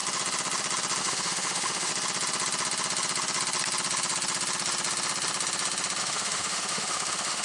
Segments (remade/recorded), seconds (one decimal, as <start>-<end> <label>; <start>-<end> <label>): 0.0-1.0 recorded; 1.0-1.9 remade; 1.9-6.0 recorded; 6.0-7.4 remade